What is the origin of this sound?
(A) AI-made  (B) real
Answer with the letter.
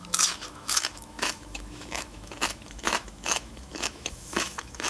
A